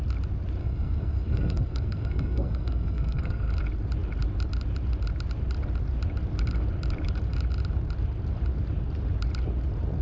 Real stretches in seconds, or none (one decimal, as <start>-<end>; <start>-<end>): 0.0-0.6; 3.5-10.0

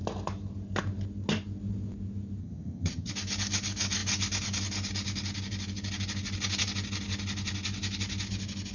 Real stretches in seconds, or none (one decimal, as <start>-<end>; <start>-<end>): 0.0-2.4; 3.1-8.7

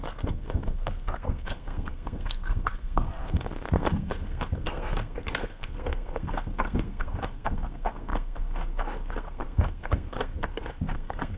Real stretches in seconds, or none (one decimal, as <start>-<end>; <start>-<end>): none

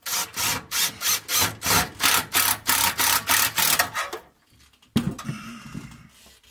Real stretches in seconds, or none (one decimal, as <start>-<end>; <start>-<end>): 0.0-6.5

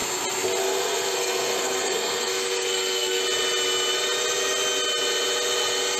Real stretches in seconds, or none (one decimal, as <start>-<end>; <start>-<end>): 0.0-0.6; 3.2-6.0

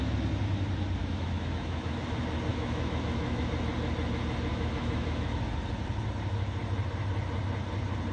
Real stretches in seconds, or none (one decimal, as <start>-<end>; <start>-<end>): 0.0-1.0; 2.0-2.5; 3.4-4.5; 5.5-8.1

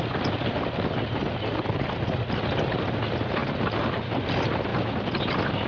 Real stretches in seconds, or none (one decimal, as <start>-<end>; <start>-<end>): 0.0-5.7